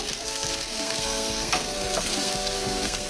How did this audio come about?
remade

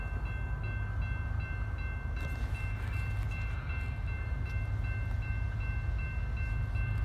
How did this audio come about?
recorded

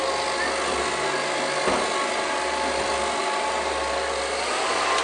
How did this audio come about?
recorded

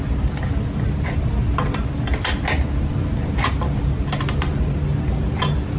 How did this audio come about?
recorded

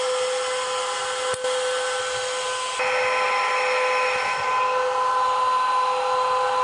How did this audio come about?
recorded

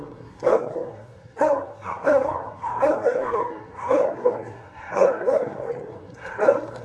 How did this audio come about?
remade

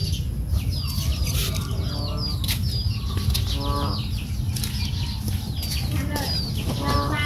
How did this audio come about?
recorded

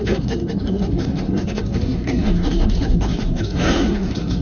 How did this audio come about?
remade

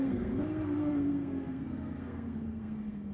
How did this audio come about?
remade